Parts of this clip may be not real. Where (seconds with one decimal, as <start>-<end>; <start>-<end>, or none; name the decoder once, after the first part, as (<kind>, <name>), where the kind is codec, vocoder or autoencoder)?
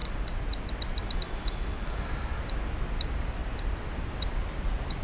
none